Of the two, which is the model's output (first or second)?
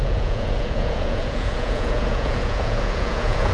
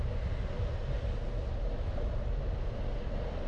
first